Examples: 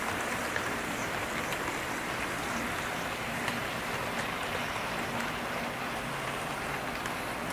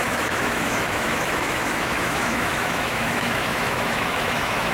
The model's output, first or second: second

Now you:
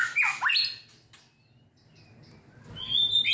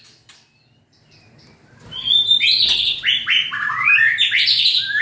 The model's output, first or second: second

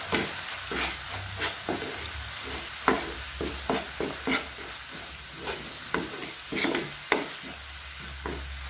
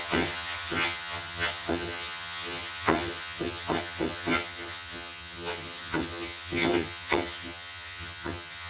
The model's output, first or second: second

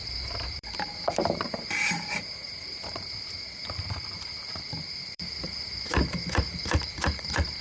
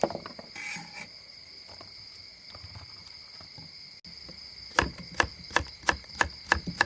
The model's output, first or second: first